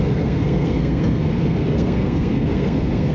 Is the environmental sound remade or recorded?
remade